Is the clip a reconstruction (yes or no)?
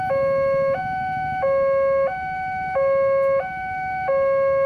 no